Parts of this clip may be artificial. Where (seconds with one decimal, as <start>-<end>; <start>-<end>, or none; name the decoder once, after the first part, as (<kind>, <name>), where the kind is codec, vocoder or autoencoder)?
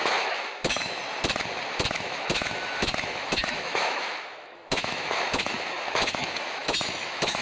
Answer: 0.0-1.0 (autoencoder, DAC-VAE); 1.9-7.4